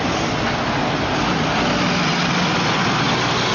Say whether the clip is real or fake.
real